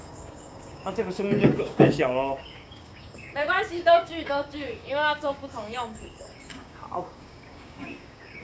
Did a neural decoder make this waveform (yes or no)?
yes